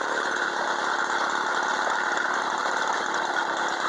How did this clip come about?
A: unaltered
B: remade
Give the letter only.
A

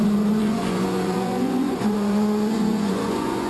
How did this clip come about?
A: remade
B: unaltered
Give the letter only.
A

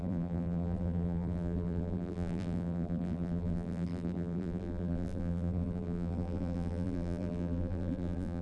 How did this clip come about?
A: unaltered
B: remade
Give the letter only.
B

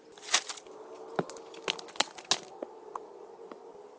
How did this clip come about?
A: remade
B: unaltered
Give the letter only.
B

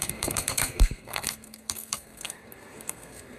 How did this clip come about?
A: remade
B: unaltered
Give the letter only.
A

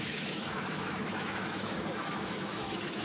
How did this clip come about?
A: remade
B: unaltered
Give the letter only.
A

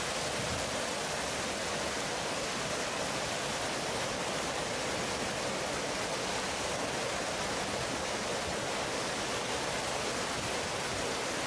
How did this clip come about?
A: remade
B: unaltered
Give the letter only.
B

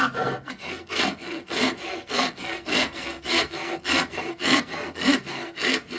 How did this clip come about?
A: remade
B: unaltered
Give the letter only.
A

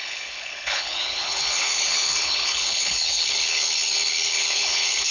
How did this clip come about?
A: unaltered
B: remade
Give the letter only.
B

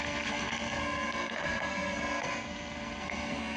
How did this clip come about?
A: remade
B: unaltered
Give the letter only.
A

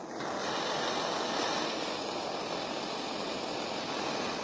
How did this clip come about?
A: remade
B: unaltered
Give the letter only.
B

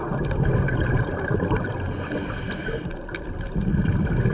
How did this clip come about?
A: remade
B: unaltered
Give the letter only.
B